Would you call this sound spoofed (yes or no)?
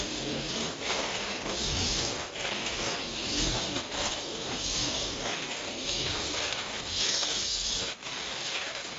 yes